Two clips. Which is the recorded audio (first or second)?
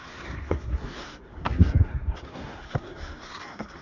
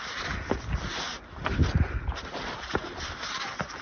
second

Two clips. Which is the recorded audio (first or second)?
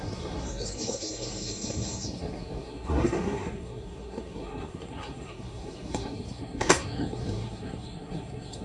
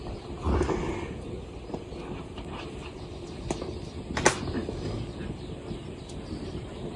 second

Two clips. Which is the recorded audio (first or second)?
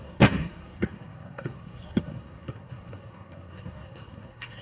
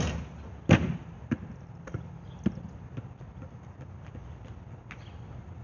second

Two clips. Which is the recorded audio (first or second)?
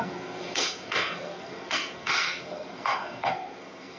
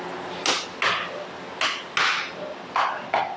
second